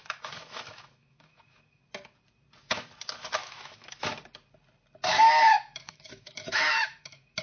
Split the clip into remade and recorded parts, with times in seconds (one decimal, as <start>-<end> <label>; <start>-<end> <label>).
0.0-1.8 remade; 1.8-3.4 recorded; 3.4-4.1 remade; 4.1-5.0 recorded; 5.0-7.4 remade